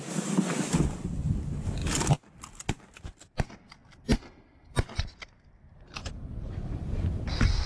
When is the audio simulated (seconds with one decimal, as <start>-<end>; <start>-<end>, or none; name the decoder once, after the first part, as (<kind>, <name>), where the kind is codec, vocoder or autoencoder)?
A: none